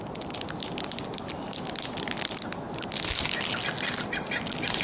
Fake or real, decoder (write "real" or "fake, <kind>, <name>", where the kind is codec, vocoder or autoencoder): real